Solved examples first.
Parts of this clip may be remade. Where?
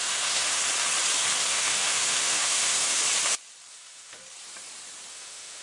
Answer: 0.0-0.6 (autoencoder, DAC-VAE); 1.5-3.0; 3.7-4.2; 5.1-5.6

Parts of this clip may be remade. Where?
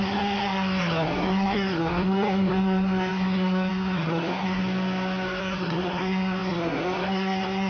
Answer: 0.0-4.6 (codec, SNAC); 5.4-7.7